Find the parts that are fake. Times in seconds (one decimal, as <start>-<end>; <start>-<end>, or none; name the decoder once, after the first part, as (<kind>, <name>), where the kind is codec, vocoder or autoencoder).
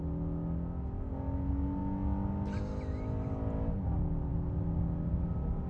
none